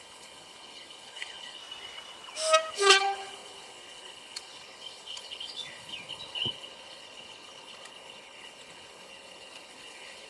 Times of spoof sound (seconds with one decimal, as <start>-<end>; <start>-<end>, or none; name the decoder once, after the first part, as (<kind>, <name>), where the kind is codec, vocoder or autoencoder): 0.0-1.6 (codec, HILCodec); 2.7-10.3